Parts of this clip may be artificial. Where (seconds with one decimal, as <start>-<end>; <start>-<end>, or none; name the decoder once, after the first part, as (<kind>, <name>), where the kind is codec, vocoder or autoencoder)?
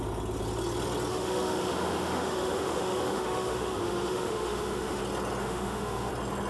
1.1-5.0 (autoencoder, DAC-VAE); 5.4-6.1